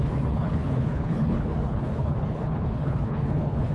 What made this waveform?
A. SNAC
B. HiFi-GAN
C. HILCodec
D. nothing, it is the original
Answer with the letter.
C